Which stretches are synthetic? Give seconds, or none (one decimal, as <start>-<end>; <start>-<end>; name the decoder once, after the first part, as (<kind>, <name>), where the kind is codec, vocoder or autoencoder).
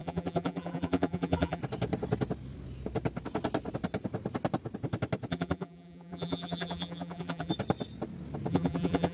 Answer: 0.0-1.6 (vocoder, BigVGAN v2); 5.3-7.5; 8.5-9.1